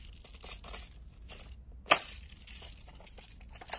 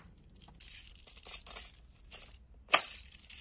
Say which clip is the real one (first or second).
first